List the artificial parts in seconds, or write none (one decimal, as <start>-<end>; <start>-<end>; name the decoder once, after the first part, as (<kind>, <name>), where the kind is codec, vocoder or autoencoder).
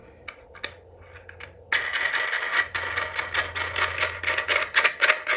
none